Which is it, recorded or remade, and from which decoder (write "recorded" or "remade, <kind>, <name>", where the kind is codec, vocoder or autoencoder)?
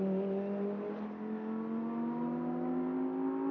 recorded